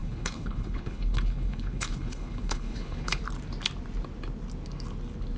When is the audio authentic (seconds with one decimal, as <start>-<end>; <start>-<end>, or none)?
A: 3.2-5.4